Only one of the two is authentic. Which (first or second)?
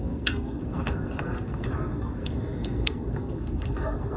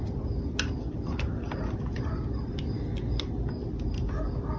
second